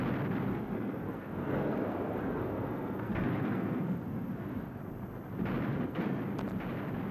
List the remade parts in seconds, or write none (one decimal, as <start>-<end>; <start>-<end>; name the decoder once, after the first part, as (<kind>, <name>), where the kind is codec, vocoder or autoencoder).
0.5-4.8 (codec, SNAC); 5.7-6.2

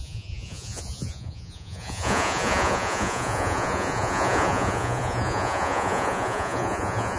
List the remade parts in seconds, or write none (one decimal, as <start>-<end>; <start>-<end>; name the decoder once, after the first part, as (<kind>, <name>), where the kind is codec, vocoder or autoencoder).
0.0-7.2 (vocoder, Vocos)